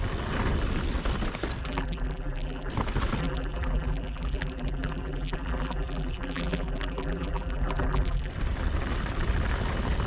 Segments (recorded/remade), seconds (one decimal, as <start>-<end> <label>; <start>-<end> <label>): 0.0-1.6 recorded; 1.6-2.7 remade; 2.7-3.2 recorded; 3.2-8.3 remade; 8.3-10.1 recorded